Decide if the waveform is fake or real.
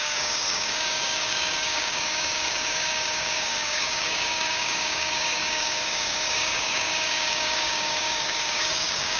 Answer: fake